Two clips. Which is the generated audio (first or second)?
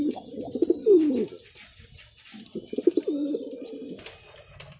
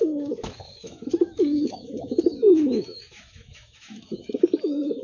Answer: second